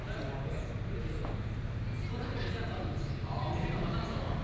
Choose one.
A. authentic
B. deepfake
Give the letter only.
A